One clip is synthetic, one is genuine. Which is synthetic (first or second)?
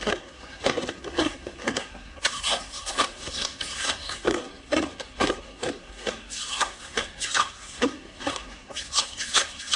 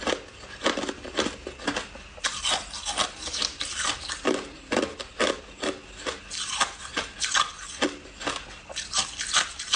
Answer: first